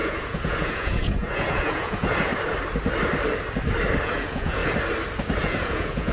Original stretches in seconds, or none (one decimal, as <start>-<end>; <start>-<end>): 2.3-4.0; 4.6-5.4